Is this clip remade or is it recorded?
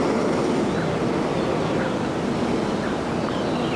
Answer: recorded